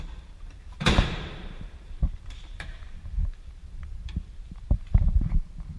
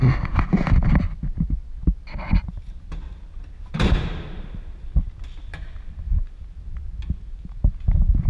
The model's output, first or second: first